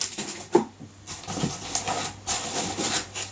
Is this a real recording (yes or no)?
yes